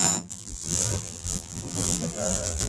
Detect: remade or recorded remade